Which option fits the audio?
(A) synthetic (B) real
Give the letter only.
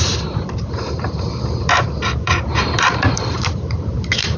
A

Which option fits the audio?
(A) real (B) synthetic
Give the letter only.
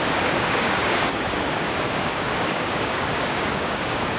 B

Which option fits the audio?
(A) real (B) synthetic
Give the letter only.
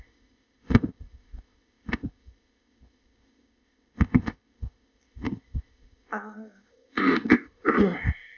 B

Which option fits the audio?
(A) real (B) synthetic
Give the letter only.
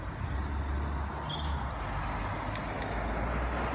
A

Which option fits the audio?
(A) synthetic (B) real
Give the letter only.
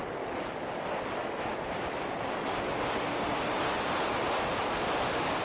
B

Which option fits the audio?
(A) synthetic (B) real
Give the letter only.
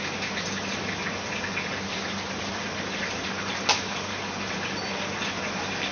B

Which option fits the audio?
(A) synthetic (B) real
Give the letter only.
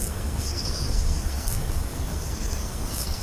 A